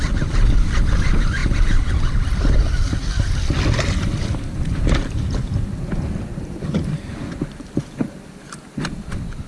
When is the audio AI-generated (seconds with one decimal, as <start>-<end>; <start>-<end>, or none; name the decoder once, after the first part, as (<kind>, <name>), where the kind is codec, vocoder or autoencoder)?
none